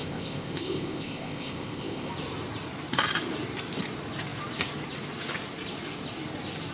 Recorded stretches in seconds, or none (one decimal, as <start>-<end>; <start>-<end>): 2.1-6.7